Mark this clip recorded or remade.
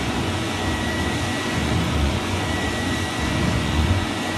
remade